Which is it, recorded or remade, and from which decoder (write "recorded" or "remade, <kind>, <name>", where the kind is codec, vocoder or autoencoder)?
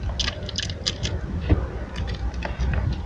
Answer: recorded